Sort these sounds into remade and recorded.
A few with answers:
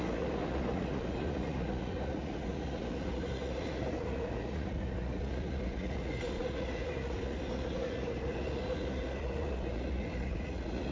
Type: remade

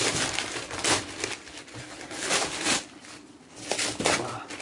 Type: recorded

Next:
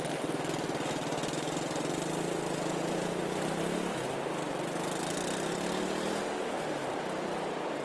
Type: recorded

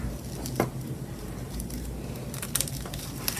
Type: recorded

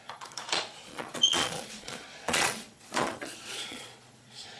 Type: remade